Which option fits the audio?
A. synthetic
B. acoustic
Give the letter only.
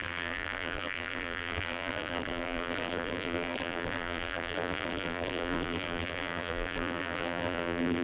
A